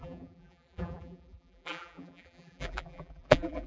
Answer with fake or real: fake